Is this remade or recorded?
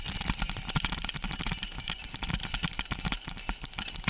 recorded